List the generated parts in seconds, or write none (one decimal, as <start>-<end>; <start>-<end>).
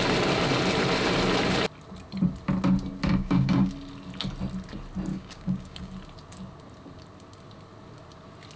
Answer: 3.1-3.7; 5.1-5.9